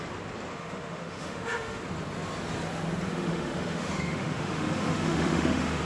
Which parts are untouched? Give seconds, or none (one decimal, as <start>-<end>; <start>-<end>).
0.0-0.5; 1.8-3.1